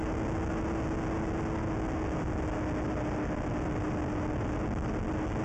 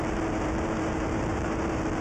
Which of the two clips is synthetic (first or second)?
second